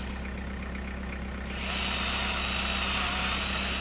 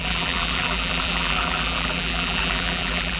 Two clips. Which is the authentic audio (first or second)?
first